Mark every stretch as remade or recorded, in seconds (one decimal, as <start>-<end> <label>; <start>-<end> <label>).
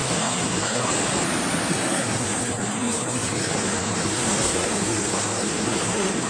0.0-0.9 remade; 0.9-1.7 recorded; 1.7-6.3 remade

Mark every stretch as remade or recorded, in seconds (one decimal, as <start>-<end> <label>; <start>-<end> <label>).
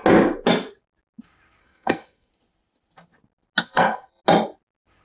0.0-1.6 recorded; 1.6-2.3 remade; 2.3-3.6 recorded; 3.6-4.2 remade; 4.2-5.0 recorded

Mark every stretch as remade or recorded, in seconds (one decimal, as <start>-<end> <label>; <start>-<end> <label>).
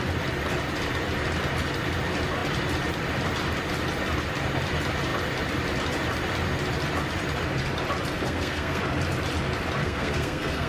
0.0-8.2 recorded; 8.2-8.8 remade; 8.8-9.8 recorded; 9.8-10.7 remade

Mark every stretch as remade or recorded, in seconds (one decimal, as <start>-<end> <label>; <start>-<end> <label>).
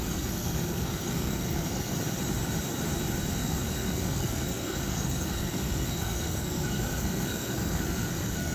0.0-1.9 remade; 1.9-3.4 recorded; 3.4-8.5 remade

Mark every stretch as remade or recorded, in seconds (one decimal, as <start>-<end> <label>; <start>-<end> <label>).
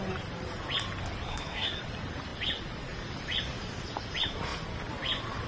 0.0-1.3 recorded; 1.3-1.8 remade; 1.8-5.5 recorded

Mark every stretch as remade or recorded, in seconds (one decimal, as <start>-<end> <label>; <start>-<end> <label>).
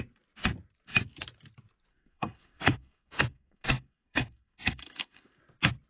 0.0-1.9 recorded; 1.9-5.4 remade; 5.4-5.9 recorded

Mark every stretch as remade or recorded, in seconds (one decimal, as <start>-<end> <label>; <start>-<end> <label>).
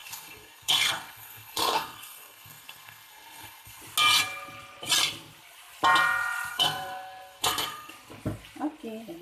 0.0-3.8 remade; 3.8-6.5 recorded; 6.5-7.9 remade; 7.9-9.2 recorded